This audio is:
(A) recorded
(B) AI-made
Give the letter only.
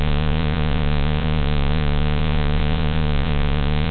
B